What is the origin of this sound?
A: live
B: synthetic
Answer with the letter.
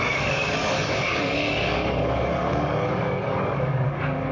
B